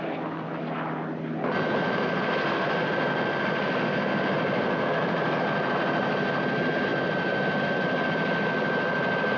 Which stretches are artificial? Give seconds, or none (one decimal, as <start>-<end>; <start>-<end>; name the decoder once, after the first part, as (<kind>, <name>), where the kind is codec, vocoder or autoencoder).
none

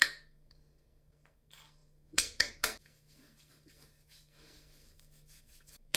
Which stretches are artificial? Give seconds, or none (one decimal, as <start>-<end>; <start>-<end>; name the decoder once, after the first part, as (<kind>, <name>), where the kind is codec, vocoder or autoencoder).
0.0-6.0 (codec, SNAC)

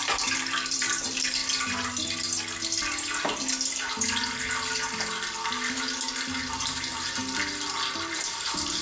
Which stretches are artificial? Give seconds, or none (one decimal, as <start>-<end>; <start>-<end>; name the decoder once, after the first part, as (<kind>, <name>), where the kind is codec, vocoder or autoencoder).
0.0-1.4 (vocoder, BigVGAN v2); 6.5-7.2; 8.1-8.8

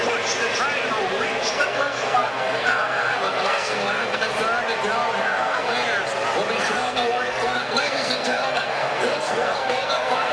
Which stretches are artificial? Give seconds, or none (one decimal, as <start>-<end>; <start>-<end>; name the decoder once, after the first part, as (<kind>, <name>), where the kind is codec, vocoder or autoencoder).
1.5-4.3 (codec, SNAC); 5.2-5.7; 6.6-10.3

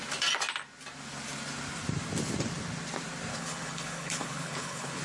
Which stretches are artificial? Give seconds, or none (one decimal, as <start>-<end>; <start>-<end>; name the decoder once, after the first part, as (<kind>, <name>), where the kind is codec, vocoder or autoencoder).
3.3-5.0 (codec, HILCodec)

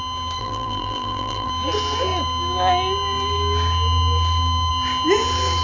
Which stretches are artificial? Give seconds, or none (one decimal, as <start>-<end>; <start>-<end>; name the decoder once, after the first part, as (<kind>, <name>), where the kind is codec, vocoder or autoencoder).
0.4-1.5 (vocoder, BigVGAN v2)

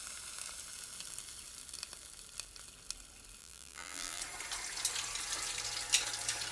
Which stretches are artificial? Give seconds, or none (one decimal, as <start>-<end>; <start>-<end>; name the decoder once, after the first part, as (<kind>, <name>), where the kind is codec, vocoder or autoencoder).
3.4-4.2 (vocoder, BigVGAN v2)